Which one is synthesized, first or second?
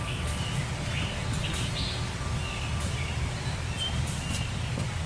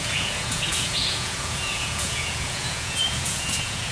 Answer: second